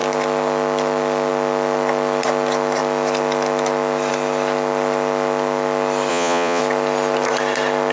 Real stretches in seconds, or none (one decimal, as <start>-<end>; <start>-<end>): 0.0-6.1; 6.6-7.9

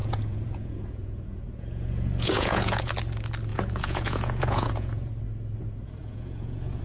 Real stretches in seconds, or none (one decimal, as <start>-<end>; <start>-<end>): 2.9-3.5; 5.1-6.0

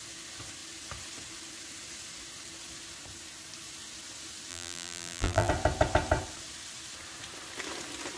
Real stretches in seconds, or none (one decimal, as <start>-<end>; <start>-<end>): 0.0-4.5; 5.5-8.2

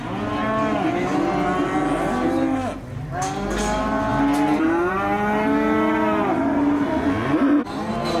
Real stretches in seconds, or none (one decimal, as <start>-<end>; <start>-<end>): 0.0-8.2

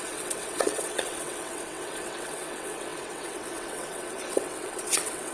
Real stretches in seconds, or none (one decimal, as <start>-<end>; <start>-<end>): none

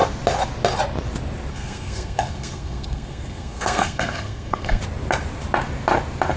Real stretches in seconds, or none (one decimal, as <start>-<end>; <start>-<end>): 0.0-1.5; 4.8-6.4

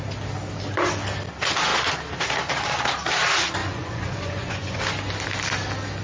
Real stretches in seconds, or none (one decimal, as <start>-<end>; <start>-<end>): 0.0-3.6; 4.8-6.0

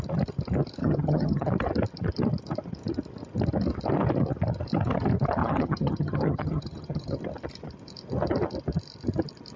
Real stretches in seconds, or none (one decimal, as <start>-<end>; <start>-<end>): 0.0-0.8; 1.5-5.4; 7.2-9.6